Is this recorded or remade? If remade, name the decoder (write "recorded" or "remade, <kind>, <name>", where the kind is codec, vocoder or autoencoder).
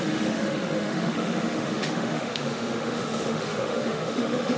remade, autoencoder, DAC-VAE